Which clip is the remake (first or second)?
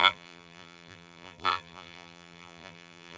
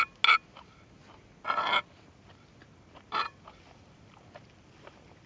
first